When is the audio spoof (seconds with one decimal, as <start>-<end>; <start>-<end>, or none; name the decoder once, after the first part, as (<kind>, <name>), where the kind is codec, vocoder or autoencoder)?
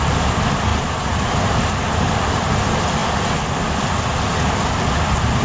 0.7-2.5 (vocoder, BigVGAN v2)